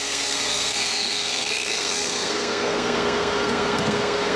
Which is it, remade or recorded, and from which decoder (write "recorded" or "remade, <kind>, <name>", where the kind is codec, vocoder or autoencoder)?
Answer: remade, codec, SNAC